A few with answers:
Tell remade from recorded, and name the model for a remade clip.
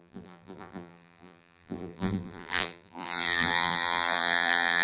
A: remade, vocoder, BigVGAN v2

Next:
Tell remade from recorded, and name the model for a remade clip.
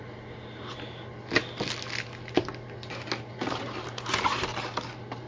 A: recorded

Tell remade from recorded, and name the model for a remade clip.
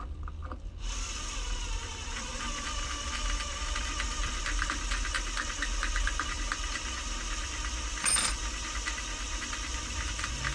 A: remade, vocoder, BigVGAN v2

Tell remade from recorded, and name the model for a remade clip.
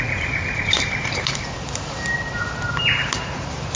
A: remade, vocoder, BigVGAN v2